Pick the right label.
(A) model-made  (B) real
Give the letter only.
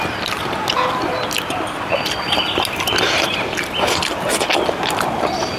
B